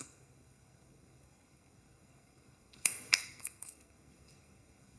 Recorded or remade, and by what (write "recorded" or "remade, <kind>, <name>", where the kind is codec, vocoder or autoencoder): remade, codec, SNAC